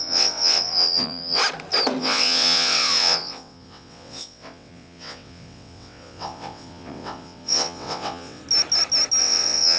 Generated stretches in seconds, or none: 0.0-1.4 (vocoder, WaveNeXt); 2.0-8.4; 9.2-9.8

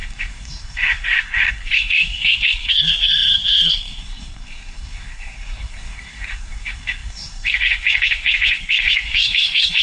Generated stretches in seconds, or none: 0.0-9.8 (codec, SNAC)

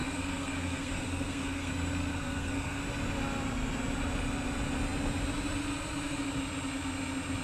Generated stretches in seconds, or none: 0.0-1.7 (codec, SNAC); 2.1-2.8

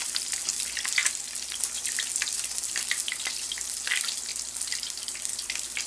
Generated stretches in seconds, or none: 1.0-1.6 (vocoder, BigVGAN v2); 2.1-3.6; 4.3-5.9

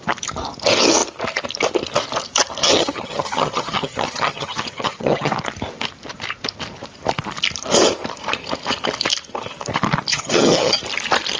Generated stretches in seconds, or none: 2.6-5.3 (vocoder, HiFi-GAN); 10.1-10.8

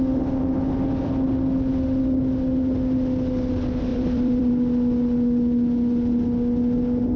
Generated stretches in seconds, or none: 3.9-4.5 (vocoder, BigVGAN v2)

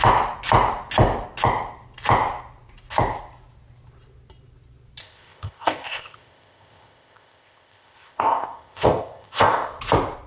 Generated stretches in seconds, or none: 5.0-9.8 (codec, ZipCodec)

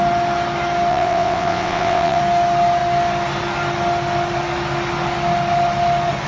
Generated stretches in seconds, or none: 0.9-2.2 (vocoder, WaveNeXt)